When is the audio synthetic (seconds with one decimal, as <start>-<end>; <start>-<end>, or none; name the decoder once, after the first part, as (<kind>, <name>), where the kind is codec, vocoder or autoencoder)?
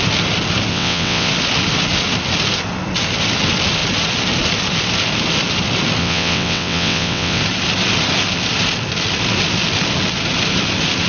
0.7-1.3 (vocoder, WaveNeXt); 6.0-7.4